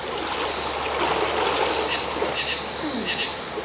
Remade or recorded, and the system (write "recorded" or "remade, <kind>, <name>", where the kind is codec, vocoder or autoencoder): recorded